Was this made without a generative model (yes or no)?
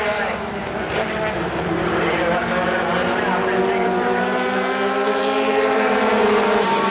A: no